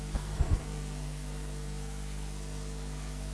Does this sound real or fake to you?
fake